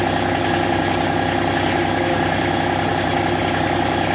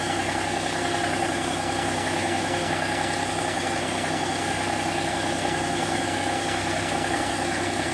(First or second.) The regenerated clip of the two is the second